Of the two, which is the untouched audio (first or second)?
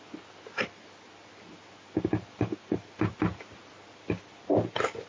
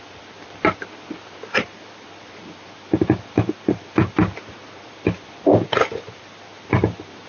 first